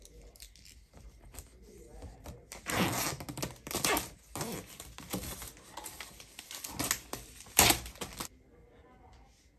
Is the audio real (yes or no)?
yes